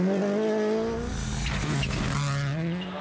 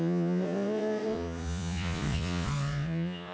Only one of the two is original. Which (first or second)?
first